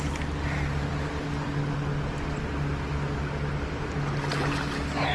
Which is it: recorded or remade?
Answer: recorded